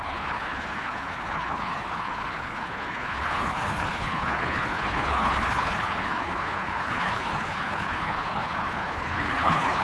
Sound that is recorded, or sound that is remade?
remade